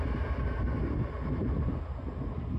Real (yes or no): yes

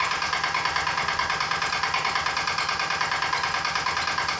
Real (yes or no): yes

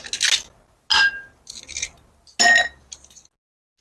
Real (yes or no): yes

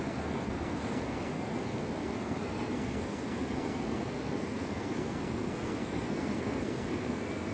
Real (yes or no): no